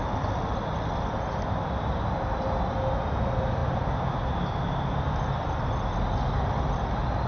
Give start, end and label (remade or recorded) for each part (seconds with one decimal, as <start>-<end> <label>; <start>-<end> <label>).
0.0-7.3 recorded